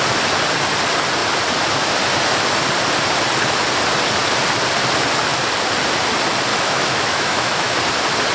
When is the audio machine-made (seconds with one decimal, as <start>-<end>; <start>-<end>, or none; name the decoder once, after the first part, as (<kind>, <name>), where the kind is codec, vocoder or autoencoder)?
6.5-7.8 (autoencoder, DAC-VAE)